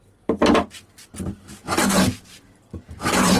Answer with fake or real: real